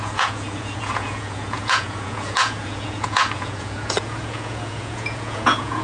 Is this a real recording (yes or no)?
no